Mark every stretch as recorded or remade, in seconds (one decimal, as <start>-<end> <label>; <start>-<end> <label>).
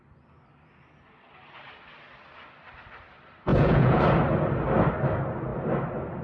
0.0-3.5 recorded; 3.5-4.0 remade; 4.0-6.2 recorded